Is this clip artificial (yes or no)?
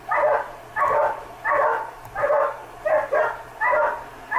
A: yes